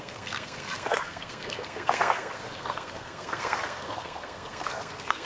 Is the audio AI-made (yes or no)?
yes